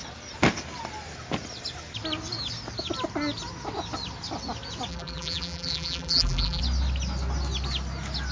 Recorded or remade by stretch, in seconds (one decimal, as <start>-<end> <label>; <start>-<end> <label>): 0.0-4.9 recorded; 4.9-6.6 remade; 6.6-8.3 recorded